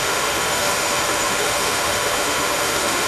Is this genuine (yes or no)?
no